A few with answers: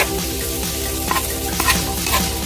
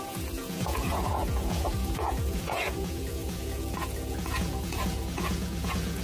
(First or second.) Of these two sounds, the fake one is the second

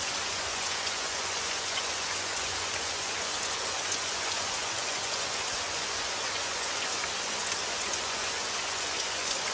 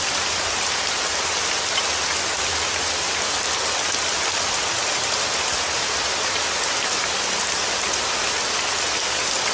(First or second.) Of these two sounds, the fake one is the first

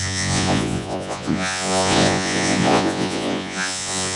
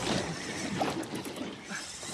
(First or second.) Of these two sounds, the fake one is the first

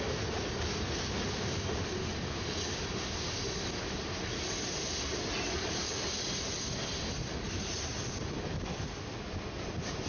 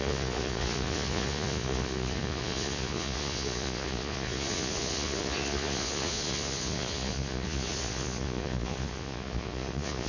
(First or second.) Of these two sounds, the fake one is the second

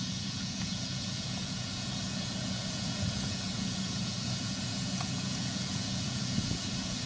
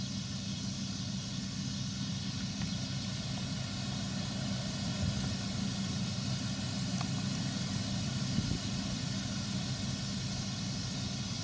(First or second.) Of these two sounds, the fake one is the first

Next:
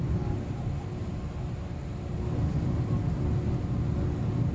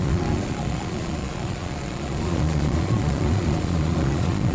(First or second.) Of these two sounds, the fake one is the second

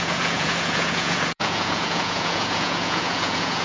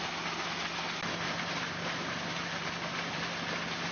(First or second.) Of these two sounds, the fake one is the first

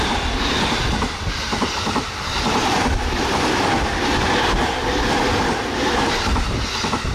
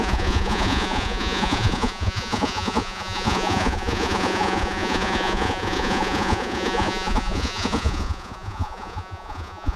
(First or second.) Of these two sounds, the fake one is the second